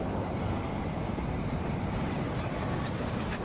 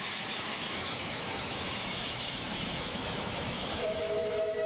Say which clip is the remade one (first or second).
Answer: second